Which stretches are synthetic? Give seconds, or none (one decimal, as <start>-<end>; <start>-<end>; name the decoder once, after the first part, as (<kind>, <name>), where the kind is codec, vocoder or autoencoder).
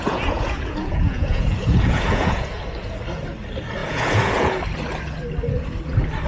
0.0-2.5 (vocoder, Vocos); 3.8-4.6